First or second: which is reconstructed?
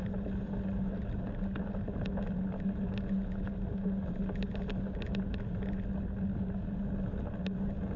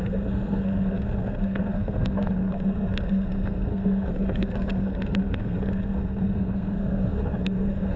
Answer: second